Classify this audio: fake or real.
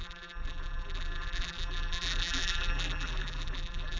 fake